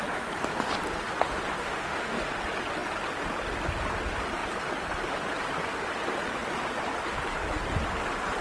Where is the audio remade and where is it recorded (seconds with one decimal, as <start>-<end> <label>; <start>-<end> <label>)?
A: 0.0-1.6 recorded; 1.6-2.2 remade; 2.2-8.4 recorded